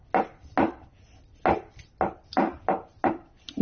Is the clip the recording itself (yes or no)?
yes